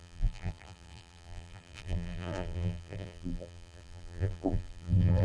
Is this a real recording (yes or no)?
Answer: no